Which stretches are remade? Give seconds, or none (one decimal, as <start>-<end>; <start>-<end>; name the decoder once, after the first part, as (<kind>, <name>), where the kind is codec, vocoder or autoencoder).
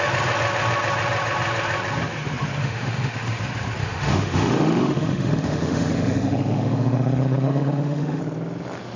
2.6-3.4 (autoencoder, DAC-VAE); 3.8-8.2